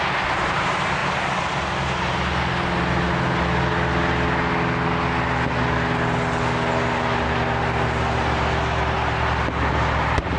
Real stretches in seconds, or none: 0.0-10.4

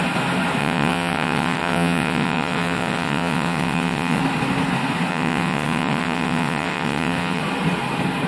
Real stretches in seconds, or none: 0.0-0.6; 4.2-5.1; 7.4-8.3